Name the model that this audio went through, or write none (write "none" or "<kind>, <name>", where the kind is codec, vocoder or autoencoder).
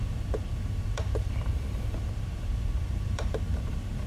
vocoder, BigVGAN v2